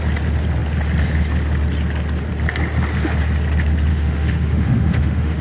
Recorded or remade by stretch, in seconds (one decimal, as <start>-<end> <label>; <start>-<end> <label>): 0.0-3.9 recorded; 3.9-5.4 remade